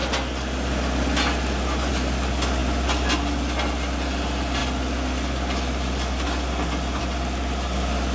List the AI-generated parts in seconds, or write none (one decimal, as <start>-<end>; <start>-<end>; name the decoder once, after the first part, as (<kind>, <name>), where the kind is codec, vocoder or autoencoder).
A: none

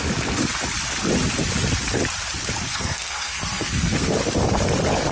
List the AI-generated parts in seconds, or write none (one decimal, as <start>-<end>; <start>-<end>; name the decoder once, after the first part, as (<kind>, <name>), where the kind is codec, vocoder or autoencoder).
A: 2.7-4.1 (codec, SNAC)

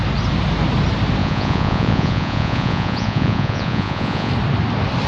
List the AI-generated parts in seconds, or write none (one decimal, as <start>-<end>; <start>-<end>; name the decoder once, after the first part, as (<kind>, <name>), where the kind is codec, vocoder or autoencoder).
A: 1.2-4.3 (vocoder, Vocos)

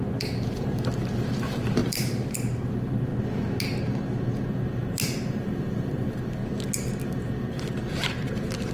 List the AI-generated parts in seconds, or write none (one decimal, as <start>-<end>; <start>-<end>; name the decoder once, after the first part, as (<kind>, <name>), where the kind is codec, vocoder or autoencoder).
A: 0.0-3.1 (vocoder, BigVGAN v2); 4.5-6.4; 7.1-8.7

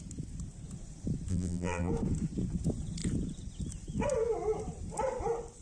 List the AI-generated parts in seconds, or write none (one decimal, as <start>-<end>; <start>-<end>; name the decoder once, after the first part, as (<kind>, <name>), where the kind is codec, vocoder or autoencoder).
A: 1.3-1.9 (vocoder, BigVGAN v2)

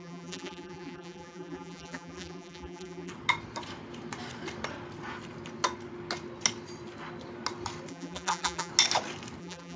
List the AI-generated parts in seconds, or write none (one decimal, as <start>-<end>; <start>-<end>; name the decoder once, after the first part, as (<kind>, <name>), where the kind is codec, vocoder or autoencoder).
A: 0.0-3.1 (vocoder, BigVGAN v2); 7.9-8.7; 9.4-9.8

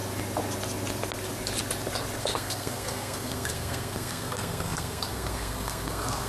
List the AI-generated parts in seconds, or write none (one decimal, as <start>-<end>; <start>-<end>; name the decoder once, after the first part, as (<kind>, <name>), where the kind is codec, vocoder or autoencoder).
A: 2.2-6.3 (codec, SNAC)

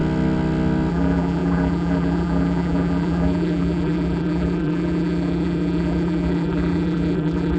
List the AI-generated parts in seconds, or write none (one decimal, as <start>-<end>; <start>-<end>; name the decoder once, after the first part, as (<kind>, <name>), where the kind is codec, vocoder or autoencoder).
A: 0.9-7.6 (vocoder, BigVGAN v2)